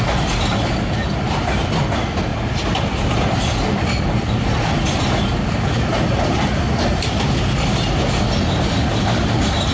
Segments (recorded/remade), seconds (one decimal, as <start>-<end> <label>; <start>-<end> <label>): 0.0-9.7 recorded